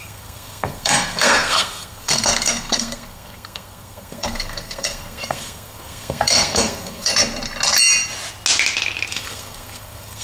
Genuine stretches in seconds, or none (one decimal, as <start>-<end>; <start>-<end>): 7.1-9.1